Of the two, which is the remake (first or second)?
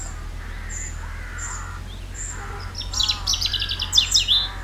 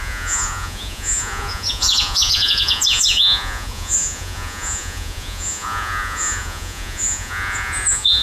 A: second